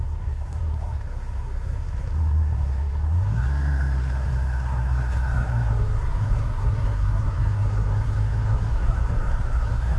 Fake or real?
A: fake